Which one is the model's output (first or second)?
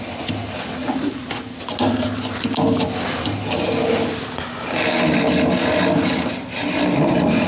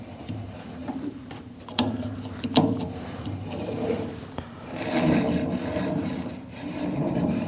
second